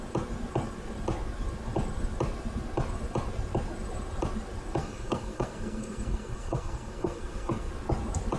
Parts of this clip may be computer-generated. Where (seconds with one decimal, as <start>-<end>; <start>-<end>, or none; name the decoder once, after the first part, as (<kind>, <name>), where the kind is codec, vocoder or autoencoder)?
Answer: 4.8-7.7 (codec, SNAC)